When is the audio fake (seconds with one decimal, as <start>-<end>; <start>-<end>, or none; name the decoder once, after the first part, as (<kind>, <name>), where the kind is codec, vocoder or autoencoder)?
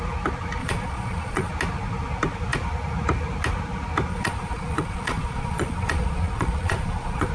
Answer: 0.6-1.5 (vocoder, Vocos); 4.1-7.3